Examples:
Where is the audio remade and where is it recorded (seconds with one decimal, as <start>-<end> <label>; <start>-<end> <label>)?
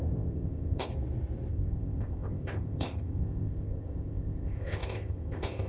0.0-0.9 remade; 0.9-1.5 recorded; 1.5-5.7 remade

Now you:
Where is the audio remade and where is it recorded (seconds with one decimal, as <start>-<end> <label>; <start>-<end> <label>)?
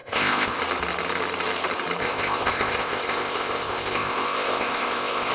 0.0-0.6 remade; 0.6-2.0 recorded; 2.0-5.3 remade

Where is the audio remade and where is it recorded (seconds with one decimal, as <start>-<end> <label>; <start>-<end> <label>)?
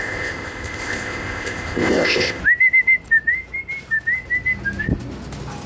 0.0-2.4 remade; 2.4-5.7 recorded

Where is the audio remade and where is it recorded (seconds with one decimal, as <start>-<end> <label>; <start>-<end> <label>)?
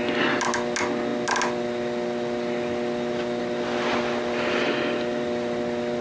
0.0-6.0 recorded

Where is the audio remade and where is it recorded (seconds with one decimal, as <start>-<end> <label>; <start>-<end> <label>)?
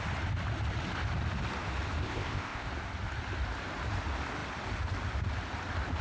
0.0-2.0 recorded; 2.0-2.7 remade; 2.7-6.0 recorded